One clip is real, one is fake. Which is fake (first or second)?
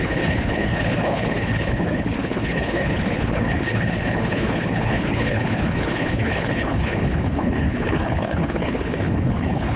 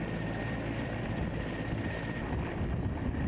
first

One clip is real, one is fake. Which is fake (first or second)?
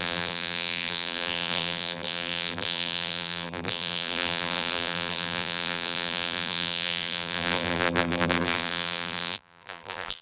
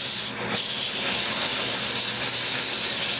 first